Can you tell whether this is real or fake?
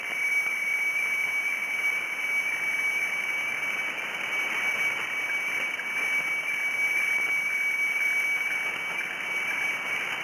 real